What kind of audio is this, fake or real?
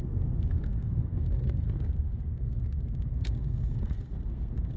fake